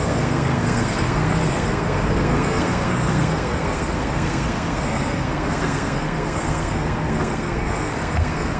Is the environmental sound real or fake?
fake